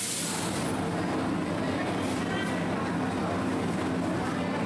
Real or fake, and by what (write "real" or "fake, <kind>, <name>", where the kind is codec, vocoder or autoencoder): real